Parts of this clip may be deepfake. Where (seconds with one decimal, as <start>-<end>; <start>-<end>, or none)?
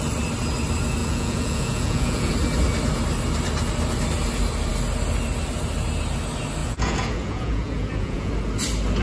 1.0-2.3; 6.6-8.3